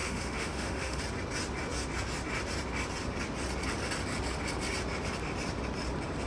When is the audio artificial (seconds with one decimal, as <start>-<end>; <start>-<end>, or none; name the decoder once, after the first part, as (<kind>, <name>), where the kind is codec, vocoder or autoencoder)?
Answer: 0.0-1.0 (autoencoder, DAC-VAE)